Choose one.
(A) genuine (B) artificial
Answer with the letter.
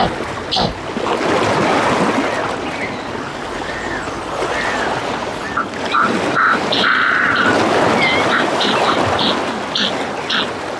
A